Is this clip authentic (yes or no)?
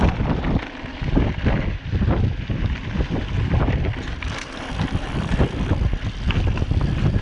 no